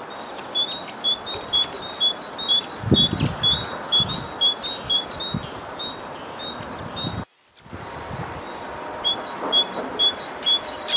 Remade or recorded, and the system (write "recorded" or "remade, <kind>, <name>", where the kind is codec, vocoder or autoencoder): recorded